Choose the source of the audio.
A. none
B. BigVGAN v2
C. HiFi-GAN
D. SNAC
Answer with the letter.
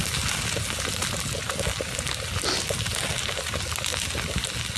A